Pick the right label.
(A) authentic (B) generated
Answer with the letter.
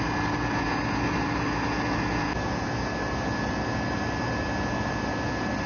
A